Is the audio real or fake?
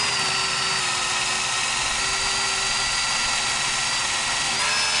real